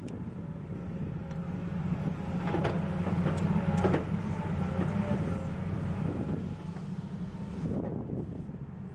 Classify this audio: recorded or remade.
recorded